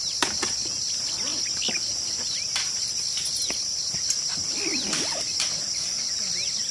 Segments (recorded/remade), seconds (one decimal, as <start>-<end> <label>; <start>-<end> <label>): 0.0-6.7 recorded